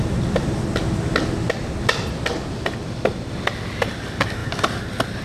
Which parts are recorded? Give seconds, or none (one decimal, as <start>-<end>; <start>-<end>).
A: 0.0-5.2